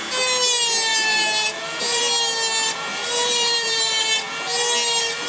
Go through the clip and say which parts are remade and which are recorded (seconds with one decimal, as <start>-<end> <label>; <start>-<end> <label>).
0.0-0.9 recorded; 0.9-2.0 remade; 2.0-2.9 recorded; 2.9-3.9 remade; 3.9-5.3 recorded